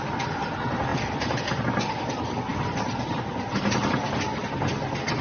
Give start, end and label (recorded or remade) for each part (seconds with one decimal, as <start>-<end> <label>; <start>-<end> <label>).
0.0-5.2 recorded